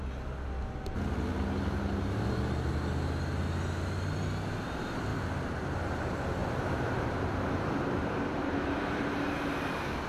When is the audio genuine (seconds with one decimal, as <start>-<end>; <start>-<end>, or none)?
0.0-5.1; 6.0-6.4; 9.1-10.1